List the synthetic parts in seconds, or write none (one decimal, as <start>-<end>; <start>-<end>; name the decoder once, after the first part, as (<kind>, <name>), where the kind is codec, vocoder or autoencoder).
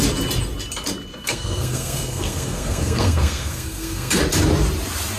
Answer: 1.1-4.2 (codec, SNAC)